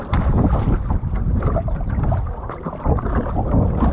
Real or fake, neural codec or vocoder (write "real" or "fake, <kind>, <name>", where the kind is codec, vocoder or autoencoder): real